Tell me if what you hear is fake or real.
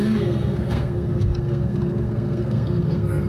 fake